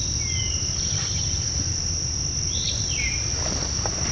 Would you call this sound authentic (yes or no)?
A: yes